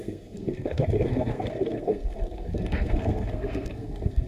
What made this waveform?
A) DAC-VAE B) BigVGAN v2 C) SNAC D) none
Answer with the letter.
C